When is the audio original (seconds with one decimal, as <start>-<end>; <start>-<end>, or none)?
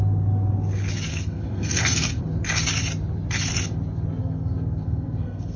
0.0-1.1; 2.2-4.2